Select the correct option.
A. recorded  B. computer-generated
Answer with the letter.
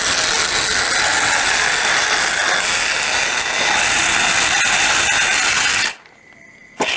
A